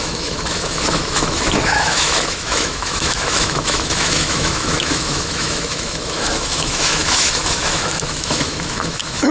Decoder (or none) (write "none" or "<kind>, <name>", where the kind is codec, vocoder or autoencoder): autoencoder, DAC-VAE